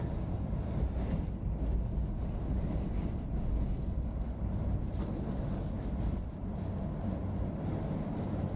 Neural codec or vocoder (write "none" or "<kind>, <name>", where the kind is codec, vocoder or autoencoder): none